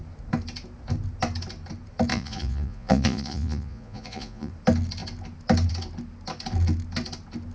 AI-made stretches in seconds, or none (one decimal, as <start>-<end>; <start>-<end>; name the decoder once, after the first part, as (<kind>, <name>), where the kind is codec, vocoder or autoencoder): 2.1-4.5 (vocoder, Vocos)